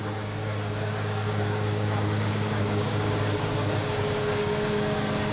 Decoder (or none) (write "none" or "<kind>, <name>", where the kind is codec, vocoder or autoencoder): codec, DAC